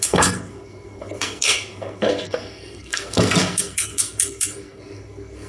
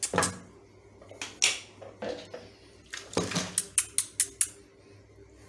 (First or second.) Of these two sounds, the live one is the second